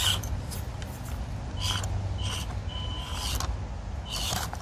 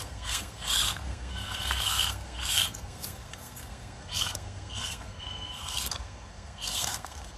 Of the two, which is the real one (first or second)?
first